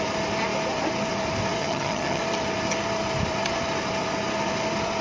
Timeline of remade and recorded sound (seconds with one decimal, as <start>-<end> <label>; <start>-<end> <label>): 0.0-1.6 recorded; 1.6-2.2 remade; 2.2-5.0 recorded